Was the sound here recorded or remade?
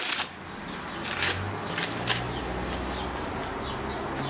recorded